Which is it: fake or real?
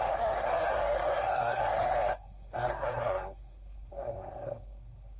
fake